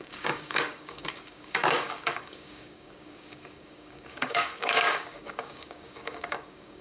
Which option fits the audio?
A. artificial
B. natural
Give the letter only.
A